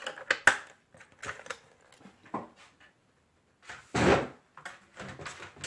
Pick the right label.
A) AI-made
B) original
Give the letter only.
B